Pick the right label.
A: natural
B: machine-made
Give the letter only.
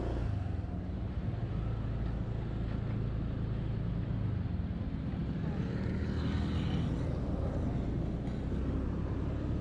A